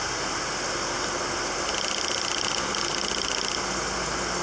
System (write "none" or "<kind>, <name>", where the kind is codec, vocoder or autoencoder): none